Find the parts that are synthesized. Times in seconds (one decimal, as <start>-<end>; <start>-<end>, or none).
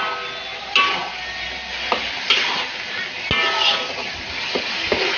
none